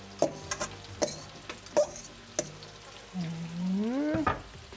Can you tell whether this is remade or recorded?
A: recorded